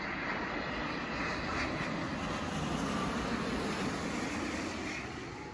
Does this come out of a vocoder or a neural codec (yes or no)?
no